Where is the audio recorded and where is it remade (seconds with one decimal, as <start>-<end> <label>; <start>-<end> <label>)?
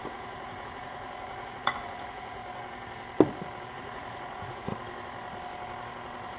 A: 0.0-2.4 remade; 2.4-3.7 recorded; 3.7-4.7 remade; 4.7-6.4 recorded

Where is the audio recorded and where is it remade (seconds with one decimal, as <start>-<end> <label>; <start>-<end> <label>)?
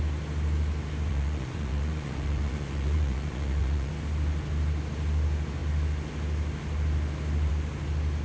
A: 0.0-1.1 recorded; 1.1-3.9 remade; 3.9-8.2 recorded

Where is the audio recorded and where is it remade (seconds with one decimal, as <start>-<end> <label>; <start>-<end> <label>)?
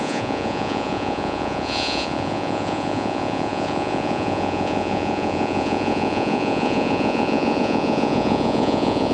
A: 0.0-9.1 remade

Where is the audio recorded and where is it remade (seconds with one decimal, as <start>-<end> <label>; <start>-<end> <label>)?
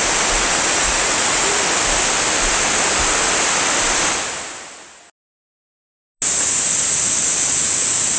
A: 0.0-0.8 recorded; 0.8-1.5 remade; 1.5-8.2 recorded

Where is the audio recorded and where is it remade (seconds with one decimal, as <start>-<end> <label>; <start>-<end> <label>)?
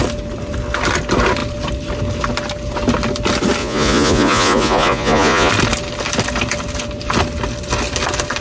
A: 0.0-3.6 recorded; 3.6-5.5 remade; 5.5-8.4 recorded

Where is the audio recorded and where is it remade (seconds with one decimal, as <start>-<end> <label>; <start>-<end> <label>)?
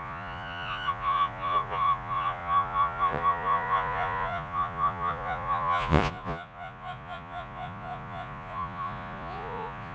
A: 0.0-9.9 remade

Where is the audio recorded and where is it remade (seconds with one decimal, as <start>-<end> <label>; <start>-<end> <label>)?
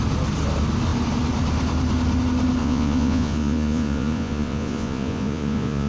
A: 0.0-2.6 recorded; 2.6-5.9 remade